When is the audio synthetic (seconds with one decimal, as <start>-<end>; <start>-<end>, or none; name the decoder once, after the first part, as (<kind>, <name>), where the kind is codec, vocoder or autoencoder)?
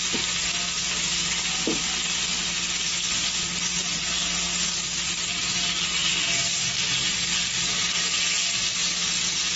none